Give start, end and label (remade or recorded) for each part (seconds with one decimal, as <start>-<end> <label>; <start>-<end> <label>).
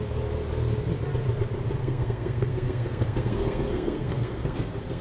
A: 0.0-1.8 recorded; 1.8-5.0 remade